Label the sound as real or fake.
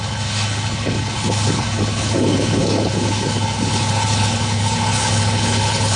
fake